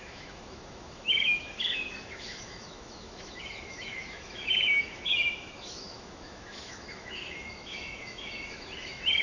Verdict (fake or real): fake